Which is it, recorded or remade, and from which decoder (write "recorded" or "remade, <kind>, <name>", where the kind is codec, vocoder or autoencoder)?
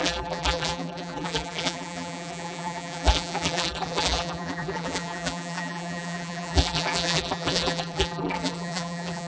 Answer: remade, vocoder, BigVGAN v2